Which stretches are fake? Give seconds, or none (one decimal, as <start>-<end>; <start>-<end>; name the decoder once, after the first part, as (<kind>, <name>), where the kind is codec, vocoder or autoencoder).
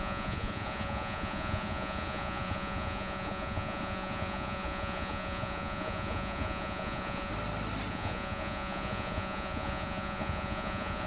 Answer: 0.0-7.3 (vocoder, Vocos); 7.9-11.1